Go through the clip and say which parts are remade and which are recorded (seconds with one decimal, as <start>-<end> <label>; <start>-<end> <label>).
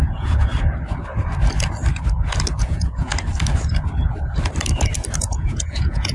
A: 0.0-0.5 remade; 0.5-2.6 recorded; 2.6-3.1 remade; 3.1-5.2 recorded; 5.2-6.1 remade